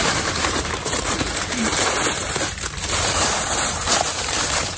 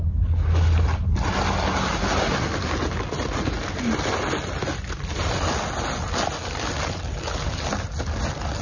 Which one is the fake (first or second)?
first